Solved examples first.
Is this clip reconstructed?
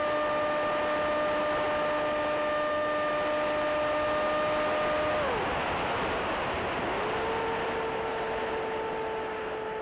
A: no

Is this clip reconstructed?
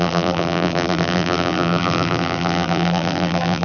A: yes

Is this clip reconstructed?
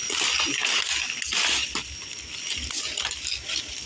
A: no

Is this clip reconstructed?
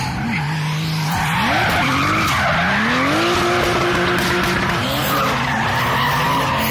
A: no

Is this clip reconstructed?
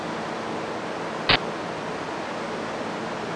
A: no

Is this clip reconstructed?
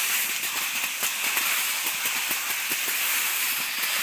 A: no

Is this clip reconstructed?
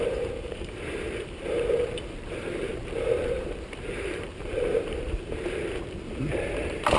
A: yes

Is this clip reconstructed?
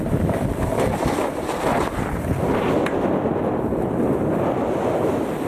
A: no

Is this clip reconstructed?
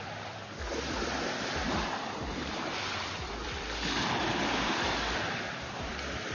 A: yes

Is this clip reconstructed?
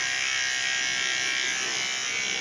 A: no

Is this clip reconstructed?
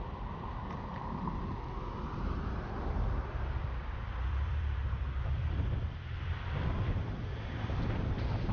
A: yes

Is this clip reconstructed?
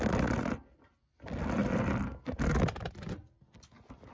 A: no